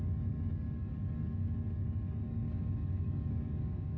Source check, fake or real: fake